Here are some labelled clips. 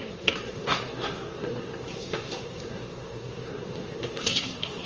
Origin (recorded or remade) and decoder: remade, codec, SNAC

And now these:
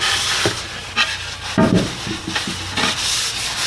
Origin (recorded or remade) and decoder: recorded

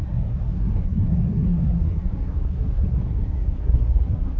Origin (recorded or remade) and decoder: remade, codec, SNAC